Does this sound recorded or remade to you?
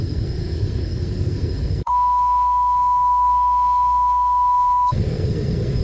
remade